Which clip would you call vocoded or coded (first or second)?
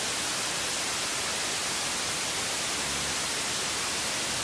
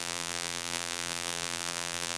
second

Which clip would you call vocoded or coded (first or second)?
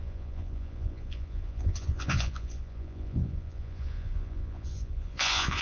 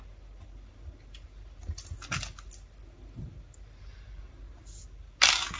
first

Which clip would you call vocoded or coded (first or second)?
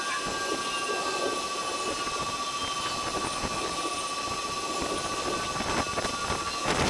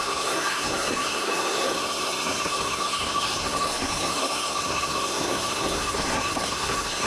second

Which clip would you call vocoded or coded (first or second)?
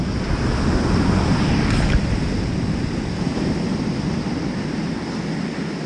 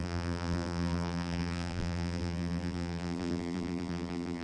second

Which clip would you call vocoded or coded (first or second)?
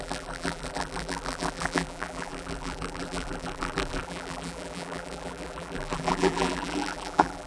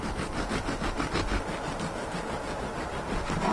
first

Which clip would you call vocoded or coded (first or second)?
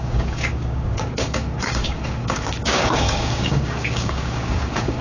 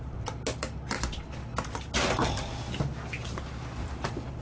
first